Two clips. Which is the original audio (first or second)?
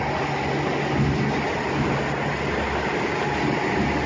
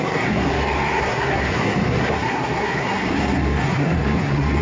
first